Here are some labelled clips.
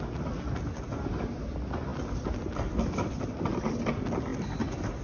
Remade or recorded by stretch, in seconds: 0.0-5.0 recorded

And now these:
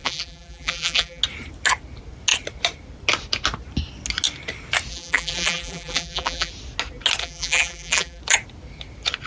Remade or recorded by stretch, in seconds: 0.0-1.2 remade; 1.2-4.9 recorded; 4.9-6.5 remade; 6.5-7.2 recorded; 7.2-8.2 remade; 8.2-9.3 recorded